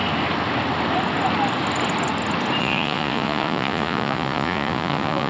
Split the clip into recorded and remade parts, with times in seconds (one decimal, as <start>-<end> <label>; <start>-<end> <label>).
0.0-2.6 recorded; 2.6-5.3 remade